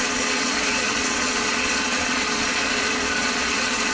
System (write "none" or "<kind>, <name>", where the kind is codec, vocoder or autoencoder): vocoder, Vocos